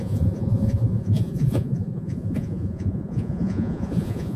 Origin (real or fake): fake